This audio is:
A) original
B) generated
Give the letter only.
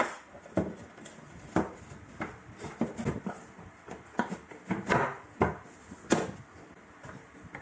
A